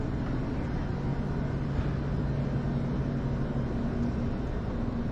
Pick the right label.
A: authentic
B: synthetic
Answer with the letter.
A